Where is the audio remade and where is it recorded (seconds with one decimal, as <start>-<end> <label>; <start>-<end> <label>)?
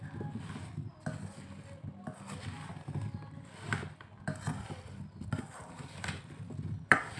0.0-7.2 recorded